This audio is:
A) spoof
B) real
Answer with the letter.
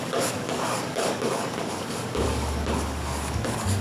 A